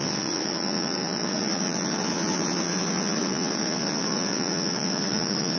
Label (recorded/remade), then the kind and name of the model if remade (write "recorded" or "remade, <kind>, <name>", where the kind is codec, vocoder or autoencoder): remade, vocoder, Vocos